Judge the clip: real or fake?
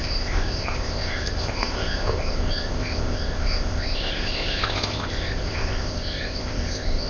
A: fake